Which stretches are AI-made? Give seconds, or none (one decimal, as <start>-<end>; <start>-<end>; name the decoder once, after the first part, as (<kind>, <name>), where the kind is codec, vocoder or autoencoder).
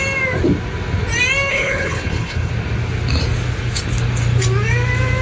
1.5-2.5 (codec, HILCodec)